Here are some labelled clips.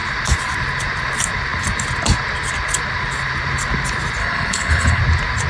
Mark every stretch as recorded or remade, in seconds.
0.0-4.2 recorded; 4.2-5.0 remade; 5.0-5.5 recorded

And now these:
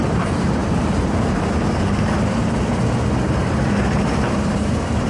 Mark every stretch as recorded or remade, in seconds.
0.0-5.1 recorded

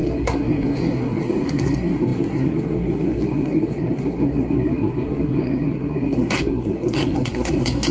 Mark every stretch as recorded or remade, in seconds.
0.0-7.9 remade

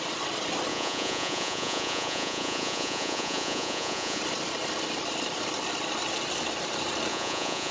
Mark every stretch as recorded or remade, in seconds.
0.0-0.7 recorded; 0.7-4.2 remade; 4.2-7.1 recorded; 7.1-7.7 remade

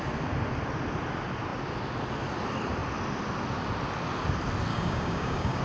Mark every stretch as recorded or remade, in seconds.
0.0-4.7 recorded; 4.7-5.6 remade

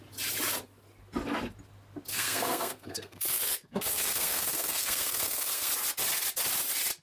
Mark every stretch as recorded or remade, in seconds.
0.0-2.1 recorded; 2.1-5.7 remade; 5.7-7.0 recorded

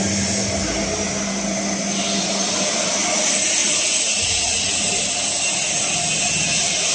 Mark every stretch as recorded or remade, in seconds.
0.0-3.6 recorded; 3.6-4.7 remade; 4.7-6.9 recorded